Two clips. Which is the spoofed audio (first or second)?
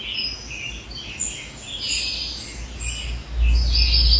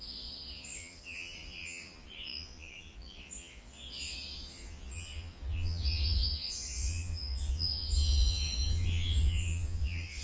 second